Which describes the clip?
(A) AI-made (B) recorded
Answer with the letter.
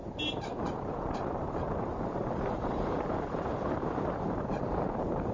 A